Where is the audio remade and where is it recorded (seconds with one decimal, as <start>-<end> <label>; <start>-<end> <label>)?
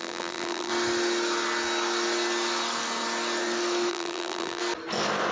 0.0-0.7 remade; 0.7-3.9 recorded; 3.9-4.6 remade; 4.6-5.3 recorded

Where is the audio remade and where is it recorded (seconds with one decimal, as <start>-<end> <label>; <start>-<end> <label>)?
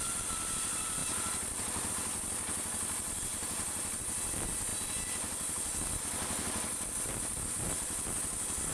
0.0-1.0 recorded; 1.0-1.9 remade; 1.9-8.7 recorded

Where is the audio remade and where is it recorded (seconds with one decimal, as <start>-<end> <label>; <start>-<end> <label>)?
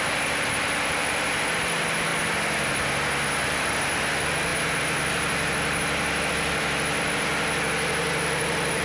0.0-2.1 remade; 2.1-3.4 recorded; 3.4-7.3 remade; 7.3-7.9 recorded; 7.9-8.8 remade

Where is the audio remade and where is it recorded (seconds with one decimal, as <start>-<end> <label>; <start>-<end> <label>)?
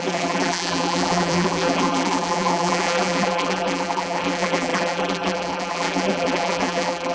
0.0-7.1 remade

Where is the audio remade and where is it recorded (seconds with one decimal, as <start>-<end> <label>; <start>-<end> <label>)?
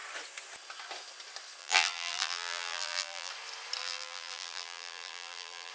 0.0-1.6 recorded; 1.6-3.3 remade; 3.3-3.8 recorded; 3.8-5.7 remade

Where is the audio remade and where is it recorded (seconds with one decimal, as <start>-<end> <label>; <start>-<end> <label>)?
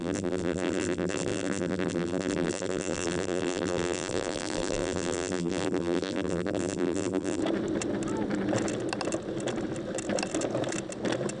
0.0-7.4 remade; 7.4-11.4 recorded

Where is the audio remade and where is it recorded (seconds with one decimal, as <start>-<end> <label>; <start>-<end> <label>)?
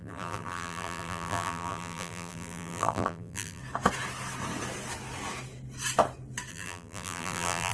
0.0-3.6 remade; 3.6-6.5 recorded; 6.5-7.7 remade